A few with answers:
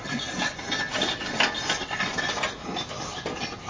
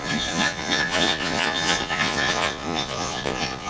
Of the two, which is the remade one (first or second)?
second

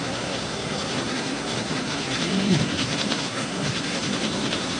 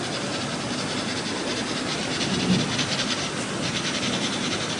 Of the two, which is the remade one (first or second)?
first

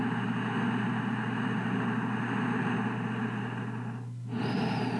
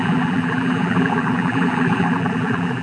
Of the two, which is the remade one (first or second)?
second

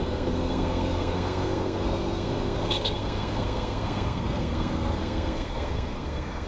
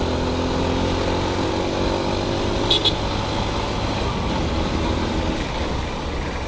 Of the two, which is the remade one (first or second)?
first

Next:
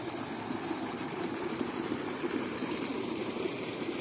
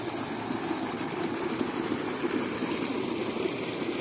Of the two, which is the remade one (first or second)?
first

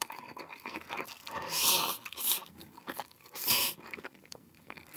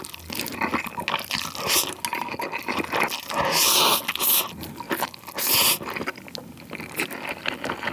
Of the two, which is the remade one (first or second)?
first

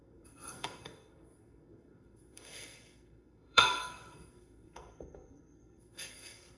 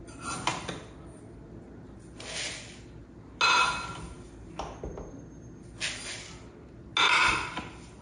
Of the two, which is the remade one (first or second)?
first